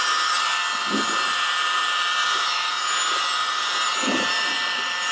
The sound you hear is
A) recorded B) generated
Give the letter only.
B